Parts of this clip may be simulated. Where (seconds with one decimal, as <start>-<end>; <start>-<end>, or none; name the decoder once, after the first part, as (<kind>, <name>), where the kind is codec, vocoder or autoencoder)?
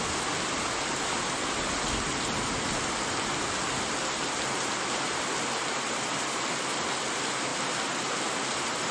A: none